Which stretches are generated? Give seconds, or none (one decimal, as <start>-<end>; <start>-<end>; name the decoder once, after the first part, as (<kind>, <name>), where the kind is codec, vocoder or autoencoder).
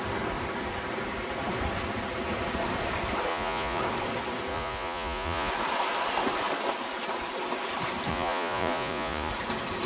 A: 3.3-3.8 (vocoder, Vocos); 4.5-5.5; 8.1-9.3